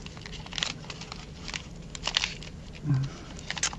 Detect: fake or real real